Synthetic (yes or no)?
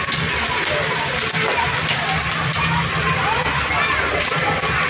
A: no